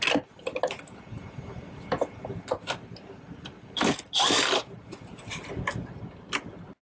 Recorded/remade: recorded